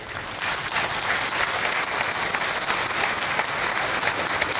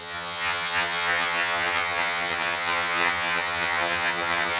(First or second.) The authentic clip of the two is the first